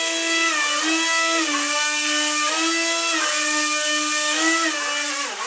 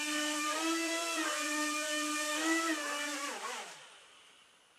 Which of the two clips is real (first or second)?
first